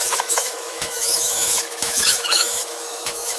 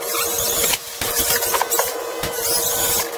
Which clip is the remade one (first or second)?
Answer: first